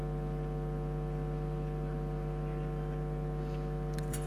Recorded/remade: recorded